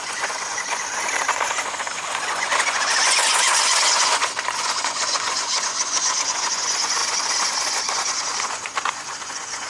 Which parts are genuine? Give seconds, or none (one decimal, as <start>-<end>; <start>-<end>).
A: none